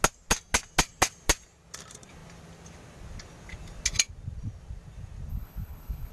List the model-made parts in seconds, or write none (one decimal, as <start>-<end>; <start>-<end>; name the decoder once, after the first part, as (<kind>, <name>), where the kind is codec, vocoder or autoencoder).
5.3-6.1 (codec, HILCodec)